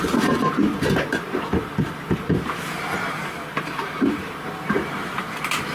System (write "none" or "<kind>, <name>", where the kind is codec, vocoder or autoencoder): vocoder, BigVGAN v2